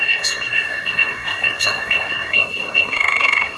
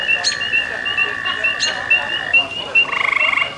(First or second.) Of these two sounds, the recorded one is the second